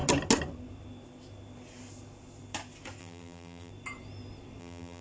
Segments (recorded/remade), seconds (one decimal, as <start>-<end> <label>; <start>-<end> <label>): 0.0-3.0 recorded; 3.0-3.7 remade; 3.7-4.6 recorded; 4.6-5.0 remade